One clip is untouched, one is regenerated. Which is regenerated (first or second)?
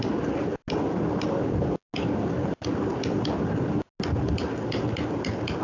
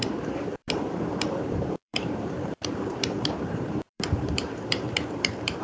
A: second